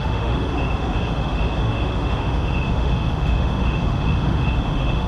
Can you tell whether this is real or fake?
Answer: fake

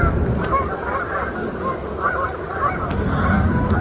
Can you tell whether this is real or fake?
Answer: real